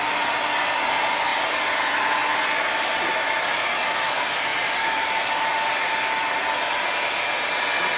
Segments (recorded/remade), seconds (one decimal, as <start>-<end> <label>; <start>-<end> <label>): 0.0-4.5 recorded; 4.5-5.5 remade; 5.5-8.0 recorded